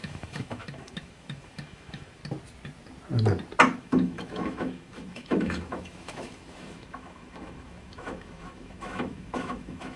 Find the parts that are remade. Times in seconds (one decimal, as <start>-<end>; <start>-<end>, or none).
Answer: 0.0-2.2; 3.8-10.0